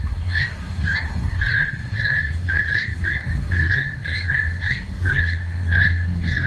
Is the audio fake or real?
fake